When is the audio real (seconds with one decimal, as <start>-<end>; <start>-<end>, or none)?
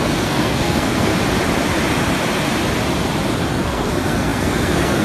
1.1-3.5